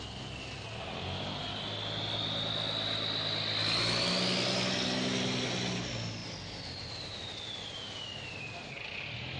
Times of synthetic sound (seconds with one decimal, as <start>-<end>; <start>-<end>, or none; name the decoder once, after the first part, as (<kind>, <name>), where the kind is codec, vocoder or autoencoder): none